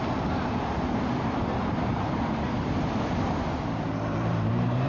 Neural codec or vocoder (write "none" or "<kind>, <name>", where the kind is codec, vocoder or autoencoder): vocoder, BigVGAN v2